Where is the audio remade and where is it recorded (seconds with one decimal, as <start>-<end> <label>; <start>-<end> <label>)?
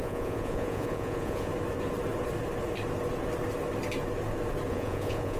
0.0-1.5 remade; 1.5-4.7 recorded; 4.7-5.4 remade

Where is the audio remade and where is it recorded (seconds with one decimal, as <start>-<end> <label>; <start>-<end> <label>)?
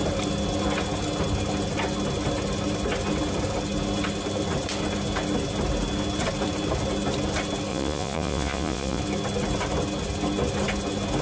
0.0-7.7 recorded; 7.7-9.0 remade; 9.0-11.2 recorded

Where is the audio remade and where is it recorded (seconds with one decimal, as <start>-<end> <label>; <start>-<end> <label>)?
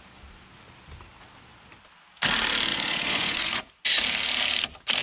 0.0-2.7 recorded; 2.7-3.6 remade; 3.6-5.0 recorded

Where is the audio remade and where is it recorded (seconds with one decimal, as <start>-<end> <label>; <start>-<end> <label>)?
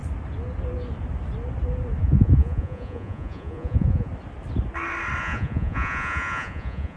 0.0-2.0 recorded; 2.0-4.1 remade; 4.1-5.2 recorded; 5.2-7.0 remade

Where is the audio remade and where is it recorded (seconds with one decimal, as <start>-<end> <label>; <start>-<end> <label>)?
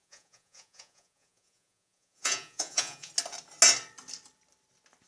0.0-3.1 remade; 3.1-5.1 recorded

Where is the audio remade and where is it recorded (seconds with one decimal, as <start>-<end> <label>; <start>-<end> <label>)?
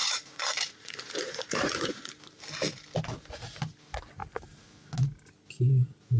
0.0-2.1 remade; 2.1-6.2 recorded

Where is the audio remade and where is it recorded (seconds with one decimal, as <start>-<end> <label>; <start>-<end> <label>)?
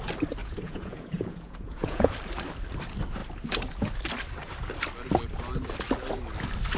0.0-0.4 recorded; 0.4-2.1 remade; 2.1-6.8 recorded